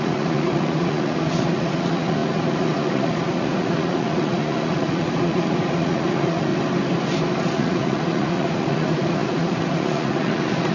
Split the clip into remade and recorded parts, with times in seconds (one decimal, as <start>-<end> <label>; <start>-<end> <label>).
0.0-6.5 remade; 6.5-7.4 recorded; 7.4-10.7 remade